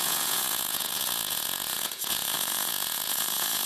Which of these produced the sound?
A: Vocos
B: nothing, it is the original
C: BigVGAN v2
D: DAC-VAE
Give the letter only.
A